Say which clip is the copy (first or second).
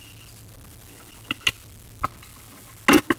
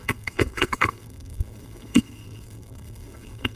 second